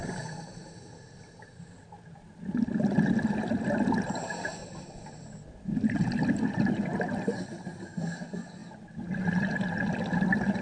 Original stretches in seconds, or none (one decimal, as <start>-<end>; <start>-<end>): 0.0-10.6